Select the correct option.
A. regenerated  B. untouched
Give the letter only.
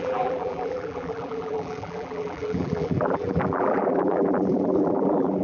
A